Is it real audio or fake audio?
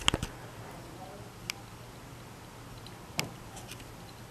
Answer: real